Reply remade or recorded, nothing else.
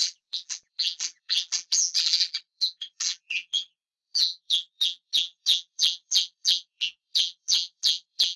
remade